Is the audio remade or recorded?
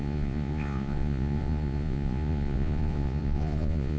remade